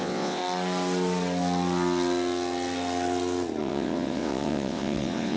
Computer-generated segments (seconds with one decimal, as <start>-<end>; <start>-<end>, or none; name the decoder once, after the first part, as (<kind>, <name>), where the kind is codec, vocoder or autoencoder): 0.0-0.4 (vocoder, WaveNeXt); 3.6-5.4